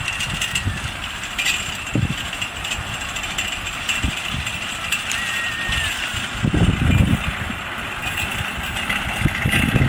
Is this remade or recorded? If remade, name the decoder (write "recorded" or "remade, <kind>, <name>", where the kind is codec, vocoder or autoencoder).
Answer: recorded